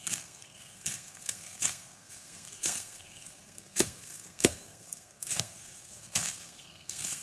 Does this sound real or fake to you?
fake